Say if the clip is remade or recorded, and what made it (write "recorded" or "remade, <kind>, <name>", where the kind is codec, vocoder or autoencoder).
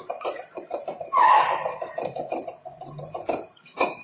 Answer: remade, vocoder, BigVGAN v2